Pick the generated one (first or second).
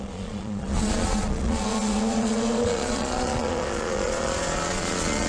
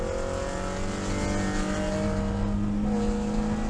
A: first